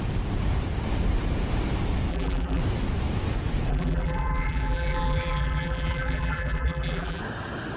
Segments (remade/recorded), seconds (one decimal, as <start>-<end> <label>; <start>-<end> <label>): 0.0-2.1 recorded; 2.1-2.6 remade; 2.6-3.7 recorded; 3.7-7.2 remade; 7.2-7.8 recorded